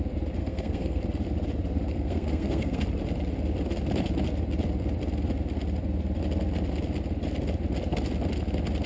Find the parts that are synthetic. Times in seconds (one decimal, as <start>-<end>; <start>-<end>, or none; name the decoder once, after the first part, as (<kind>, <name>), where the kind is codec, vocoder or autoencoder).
0.4-1.0 (codec, SNAC); 1.9-2.8